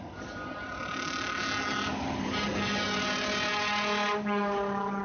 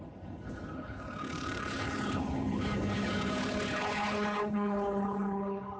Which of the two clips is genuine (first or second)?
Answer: first